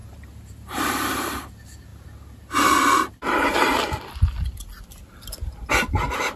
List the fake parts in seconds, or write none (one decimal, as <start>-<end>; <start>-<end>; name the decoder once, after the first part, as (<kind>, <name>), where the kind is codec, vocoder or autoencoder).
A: 0.0-1.2 (vocoder, BigVGAN v2)